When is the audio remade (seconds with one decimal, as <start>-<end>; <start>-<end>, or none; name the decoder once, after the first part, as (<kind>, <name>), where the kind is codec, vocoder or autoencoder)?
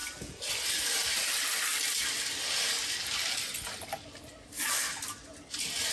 none